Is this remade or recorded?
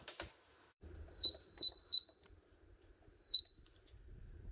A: remade